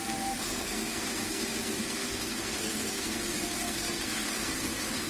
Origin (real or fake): fake